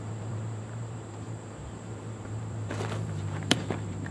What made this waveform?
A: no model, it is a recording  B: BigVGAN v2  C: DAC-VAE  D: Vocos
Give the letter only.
B